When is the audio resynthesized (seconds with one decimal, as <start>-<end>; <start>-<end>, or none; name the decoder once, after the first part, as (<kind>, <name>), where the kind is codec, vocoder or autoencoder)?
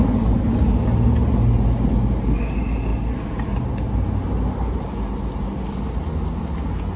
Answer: none